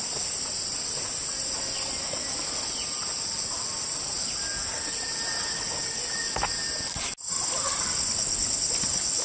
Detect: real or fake real